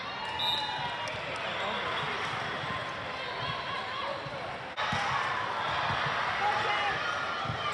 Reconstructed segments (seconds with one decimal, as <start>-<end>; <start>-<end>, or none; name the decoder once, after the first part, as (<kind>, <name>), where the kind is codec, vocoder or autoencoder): none